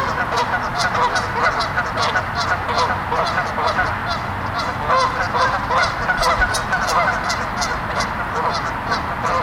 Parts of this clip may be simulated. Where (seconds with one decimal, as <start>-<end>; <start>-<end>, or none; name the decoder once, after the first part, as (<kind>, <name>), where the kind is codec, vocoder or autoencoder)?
none

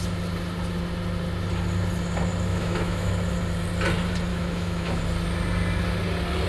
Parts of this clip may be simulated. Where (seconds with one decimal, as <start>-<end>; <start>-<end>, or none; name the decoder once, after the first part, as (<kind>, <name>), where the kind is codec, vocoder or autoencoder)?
2.5-3.1 (autoencoder, DAC-VAE); 4.3-5.0

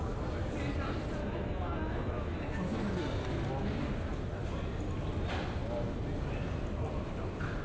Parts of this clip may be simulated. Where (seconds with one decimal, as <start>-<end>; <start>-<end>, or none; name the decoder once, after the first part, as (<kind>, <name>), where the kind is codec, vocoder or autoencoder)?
1.2-3.0 (autoencoder, DAC-VAE)

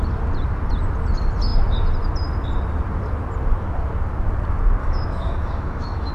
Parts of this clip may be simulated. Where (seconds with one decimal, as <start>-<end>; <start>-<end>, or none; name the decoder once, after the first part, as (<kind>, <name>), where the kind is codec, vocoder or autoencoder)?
4.8-6.1 (autoencoder, DAC-VAE)

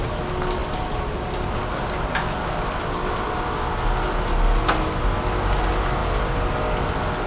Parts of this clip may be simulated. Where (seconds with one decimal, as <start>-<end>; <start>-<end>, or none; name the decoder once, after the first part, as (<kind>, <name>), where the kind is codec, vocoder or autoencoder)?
none

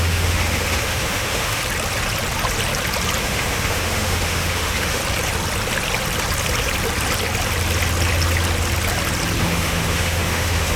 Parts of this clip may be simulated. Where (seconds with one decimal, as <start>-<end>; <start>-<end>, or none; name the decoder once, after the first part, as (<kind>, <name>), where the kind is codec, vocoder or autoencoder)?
0.0-1.6 (autoencoder, DAC-VAE); 3.2-5.0; 9.4-10.8

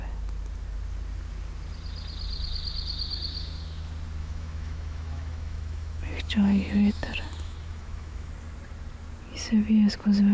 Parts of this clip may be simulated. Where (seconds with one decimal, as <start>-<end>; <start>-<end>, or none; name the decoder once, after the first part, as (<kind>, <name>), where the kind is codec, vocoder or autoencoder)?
4.2-8.3 (autoencoder, DAC-VAE)

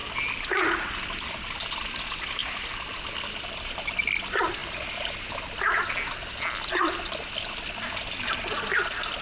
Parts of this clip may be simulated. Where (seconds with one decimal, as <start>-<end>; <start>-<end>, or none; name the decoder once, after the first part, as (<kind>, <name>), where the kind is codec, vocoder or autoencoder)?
none